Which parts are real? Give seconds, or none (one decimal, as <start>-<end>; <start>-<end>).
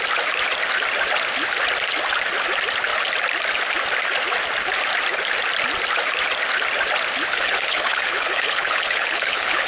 0.0-7.3